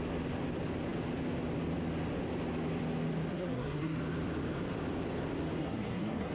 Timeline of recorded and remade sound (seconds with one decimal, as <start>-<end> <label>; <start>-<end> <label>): 0.0-3.3 recorded; 3.3-4.0 remade; 4.0-5.6 recorded; 5.6-6.3 remade